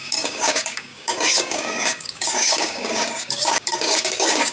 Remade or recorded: remade